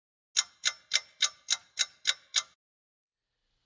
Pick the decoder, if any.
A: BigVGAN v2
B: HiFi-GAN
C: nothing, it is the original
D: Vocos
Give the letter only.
C